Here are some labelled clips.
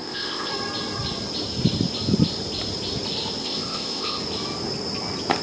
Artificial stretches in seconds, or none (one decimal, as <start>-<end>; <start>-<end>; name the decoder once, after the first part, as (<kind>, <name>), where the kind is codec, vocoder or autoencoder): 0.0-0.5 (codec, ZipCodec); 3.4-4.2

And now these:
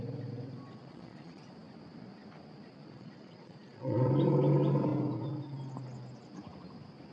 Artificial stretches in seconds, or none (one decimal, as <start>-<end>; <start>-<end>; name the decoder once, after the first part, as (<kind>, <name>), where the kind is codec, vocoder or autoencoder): 0.8-1.5 (vocoder, Vocos); 2.8-4.1

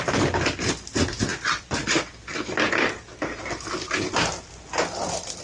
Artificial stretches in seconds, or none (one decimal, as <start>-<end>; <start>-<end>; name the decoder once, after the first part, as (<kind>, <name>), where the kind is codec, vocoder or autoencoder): none